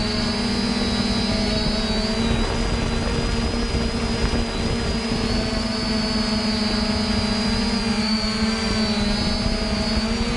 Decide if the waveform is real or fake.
real